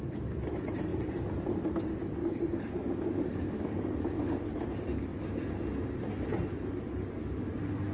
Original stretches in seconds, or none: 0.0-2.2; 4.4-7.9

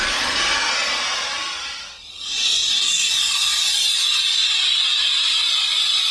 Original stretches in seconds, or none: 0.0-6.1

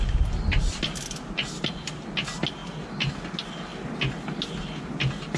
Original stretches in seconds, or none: 0.0-5.4

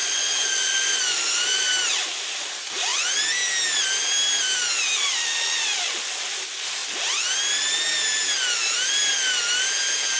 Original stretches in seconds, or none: 1.7-10.2